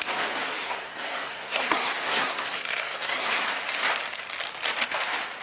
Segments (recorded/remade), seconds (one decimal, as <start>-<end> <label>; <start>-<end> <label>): 0.0-0.6 recorded; 0.6-3.4 remade; 3.4-5.4 recorded